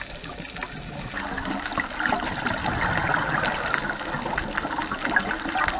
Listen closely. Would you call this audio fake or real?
real